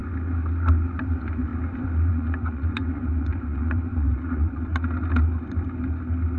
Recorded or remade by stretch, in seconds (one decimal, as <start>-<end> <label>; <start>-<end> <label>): 0.0-1.1 recorded; 1.1-1.5 remade; 1.5-2.1 recorded; 2.1-4.7 remade; 4.7-6.4 recorded